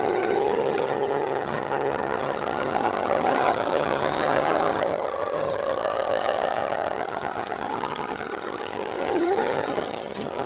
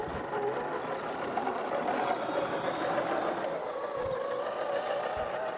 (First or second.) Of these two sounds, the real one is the second